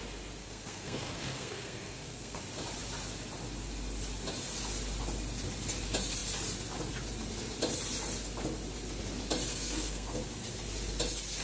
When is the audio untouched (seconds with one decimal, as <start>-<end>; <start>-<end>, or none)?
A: 0.0-0.4; 2.4-9.5; 10.2-11.4